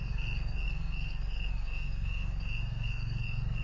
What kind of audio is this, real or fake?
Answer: fake